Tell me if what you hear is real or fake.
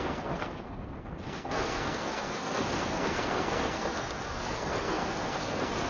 fake